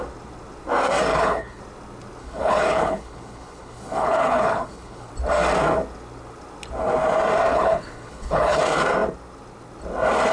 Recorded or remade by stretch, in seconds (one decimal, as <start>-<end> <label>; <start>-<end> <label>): 0.0-1.1 recorded; 1.1-1.6 remade; 1.6-2.2 recorded; 2.2-5.1 remade; 5.1-7.5 recorded; 7.5-8.6 remade; 8.6-10.3 recorded